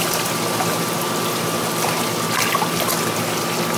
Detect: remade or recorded recorded